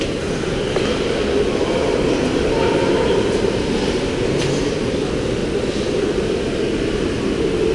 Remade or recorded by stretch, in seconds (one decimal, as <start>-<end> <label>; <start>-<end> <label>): 0.0-1.8 recorded; 1.8-3.7 remade; 3.7-7.7 recorded